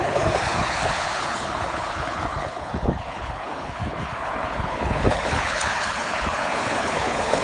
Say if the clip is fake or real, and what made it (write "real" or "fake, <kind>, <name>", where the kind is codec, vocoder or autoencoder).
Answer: fake, codec, HILCodec